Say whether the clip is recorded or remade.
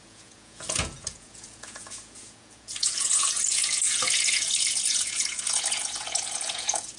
remade